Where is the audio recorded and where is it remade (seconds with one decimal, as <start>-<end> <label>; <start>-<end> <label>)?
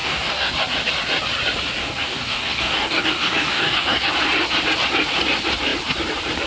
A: 0.0-0.5 remade; 0.5-1.8 recorded; 1.8-4.1 remade; 4.1-6.5 recorded